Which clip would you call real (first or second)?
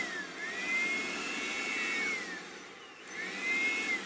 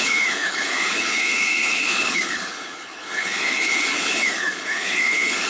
first